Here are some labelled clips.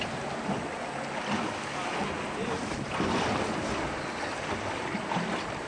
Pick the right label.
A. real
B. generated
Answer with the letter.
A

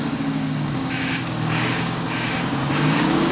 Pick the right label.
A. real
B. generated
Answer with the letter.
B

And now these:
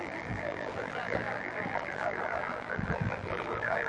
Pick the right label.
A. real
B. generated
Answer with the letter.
B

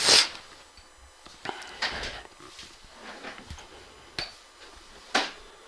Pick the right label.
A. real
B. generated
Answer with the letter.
A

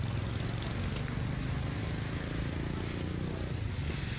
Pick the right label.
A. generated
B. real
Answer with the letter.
B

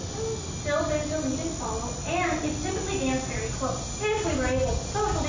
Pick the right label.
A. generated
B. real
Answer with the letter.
B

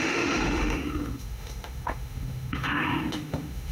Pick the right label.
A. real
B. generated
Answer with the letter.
B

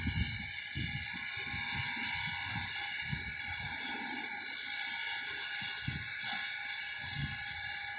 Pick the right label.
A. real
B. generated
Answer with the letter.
A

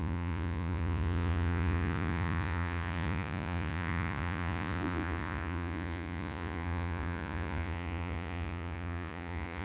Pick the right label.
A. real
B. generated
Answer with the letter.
B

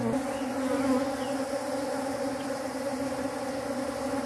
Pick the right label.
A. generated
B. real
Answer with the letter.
B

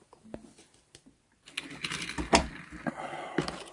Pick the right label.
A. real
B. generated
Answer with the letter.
A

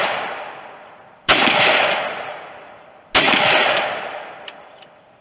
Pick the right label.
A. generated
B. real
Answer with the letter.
B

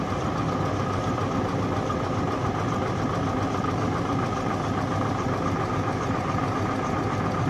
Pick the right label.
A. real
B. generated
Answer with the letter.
A